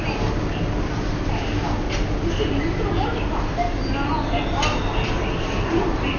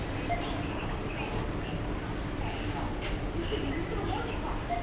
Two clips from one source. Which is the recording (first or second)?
first